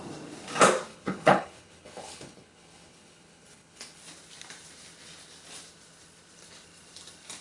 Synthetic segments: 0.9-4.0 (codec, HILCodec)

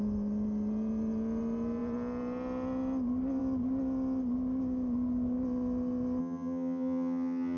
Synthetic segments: 6.2-7.6 (vocoder, HiFi-GAN)

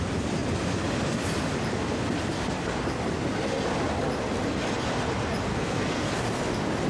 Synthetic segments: 5.5-6.1 (codec, SNAC)

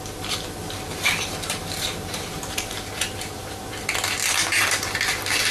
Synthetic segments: 0.6-3.9 (vocoder, BigVGAN v2)

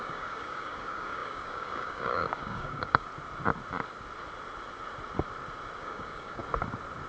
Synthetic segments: 0.0-3.1 (codec, DAC); 5.8-6.4